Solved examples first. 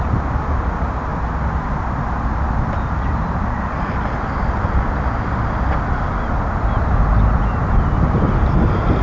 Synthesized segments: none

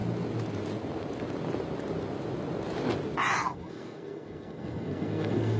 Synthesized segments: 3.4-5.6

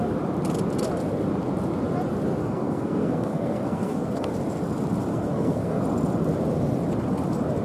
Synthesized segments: 2.4-4.3; 5.1-5.8

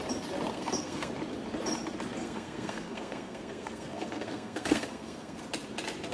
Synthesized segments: 0.5-1.1; 2.2-5.4

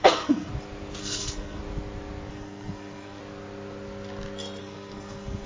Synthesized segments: 0.0-0.5; 1.0-1.6; 2.3-3.2; 4.6-5.5

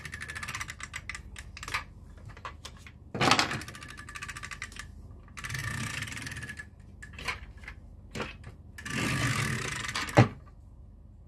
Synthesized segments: none